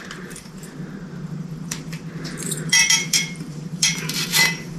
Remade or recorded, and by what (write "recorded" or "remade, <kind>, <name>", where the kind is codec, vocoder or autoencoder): remade, vocoder, BigVGAN v2